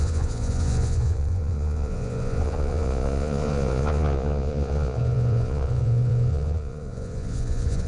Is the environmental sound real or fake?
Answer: fake